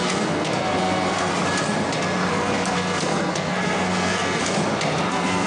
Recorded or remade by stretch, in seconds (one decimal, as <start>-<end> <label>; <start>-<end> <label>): 0.0-1.3 remade; 1.3-2.3 recorded; 2.3-4.4 remade; 4.4-5.1 recorded; 5.1-5.5 remade